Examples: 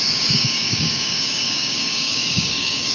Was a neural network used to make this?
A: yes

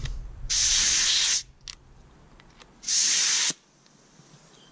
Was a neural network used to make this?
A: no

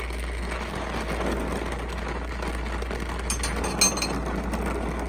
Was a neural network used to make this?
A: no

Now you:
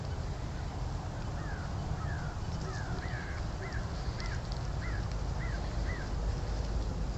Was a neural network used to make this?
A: no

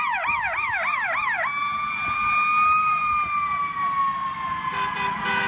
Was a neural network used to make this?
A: no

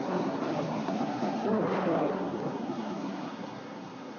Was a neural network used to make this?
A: yes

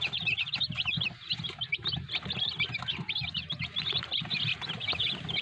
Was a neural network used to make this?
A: no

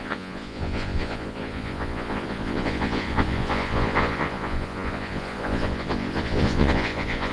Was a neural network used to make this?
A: yes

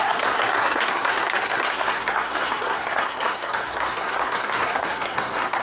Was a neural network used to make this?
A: yes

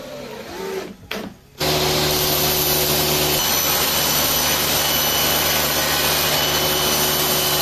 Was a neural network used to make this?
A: no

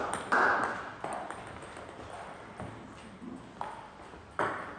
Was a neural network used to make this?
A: no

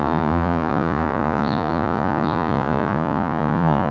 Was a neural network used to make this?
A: yes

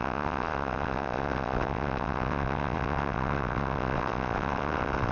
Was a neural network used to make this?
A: yes